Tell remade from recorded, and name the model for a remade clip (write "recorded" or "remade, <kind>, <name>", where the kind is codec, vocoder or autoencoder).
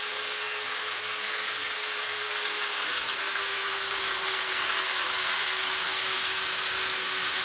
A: remade, codec, SNAC